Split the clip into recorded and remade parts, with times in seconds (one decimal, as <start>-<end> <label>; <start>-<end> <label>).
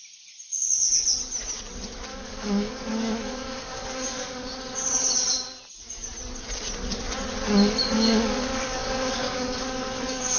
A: 0.0-2.1 recorded; 2.1-4.5 remade; 4.5-7.8 recorded; 7.8-10.4 remade